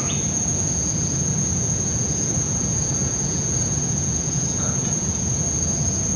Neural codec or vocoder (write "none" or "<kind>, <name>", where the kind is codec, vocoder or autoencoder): vocoder, Vocos